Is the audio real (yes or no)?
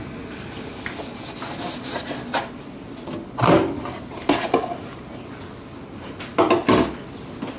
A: yes